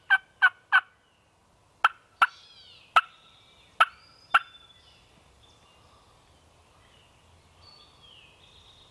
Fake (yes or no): no